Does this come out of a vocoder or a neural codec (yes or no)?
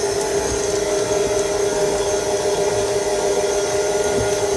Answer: no